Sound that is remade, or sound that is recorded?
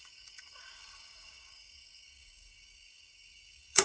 remade